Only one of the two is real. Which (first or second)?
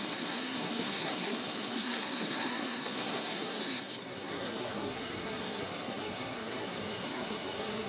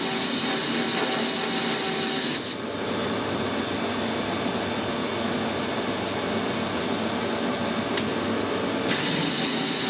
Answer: second